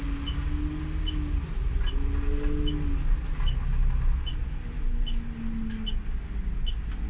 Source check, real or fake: real